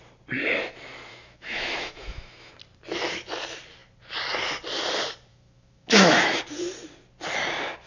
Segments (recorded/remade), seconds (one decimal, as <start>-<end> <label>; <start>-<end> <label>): 0.0-1.1 recorded; 1.1-2.5 remade; 2.5-5.3 recorded; 5.3-6.4 remade; 6.4-7.9 recorded

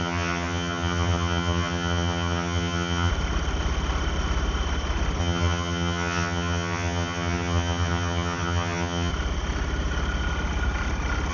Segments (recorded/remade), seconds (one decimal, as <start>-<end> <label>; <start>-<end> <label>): 0.0-3.1 remade; 3.1-5.2 recorded; 5.2-9.1 remade; 9.1-11.3 recorded

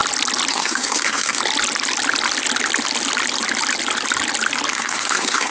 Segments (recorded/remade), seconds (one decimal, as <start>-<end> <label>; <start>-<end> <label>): 0.0-0.5 recorded; 0.5-1.4 remade; 1.4-4.7 recorded; 4.7-5.5 remade

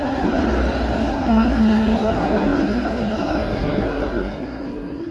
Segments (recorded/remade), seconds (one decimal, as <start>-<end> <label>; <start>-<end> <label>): 0.0-0.4 remade; 0.4-1.1 recorded; 1.1-5.1 remade

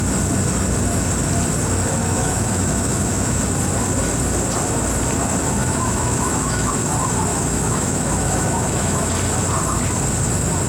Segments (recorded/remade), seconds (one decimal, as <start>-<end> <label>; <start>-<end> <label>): 0.0-2.0 recorded; 2.0-3.4 remade; 3.4-5.6 recorded; 5.6-6.7 remade; 6.7-7.3 recorded; 7.3-9.1 remade; 9.1-10.7 recorded